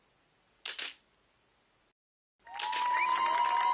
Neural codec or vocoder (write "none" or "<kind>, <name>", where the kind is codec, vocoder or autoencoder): none